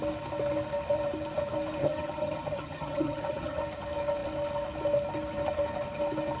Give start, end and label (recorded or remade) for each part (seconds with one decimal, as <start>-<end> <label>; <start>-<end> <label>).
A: 0.0-1.8 recorded; 1.8-3.6 remade; 3.6-6.4 recorded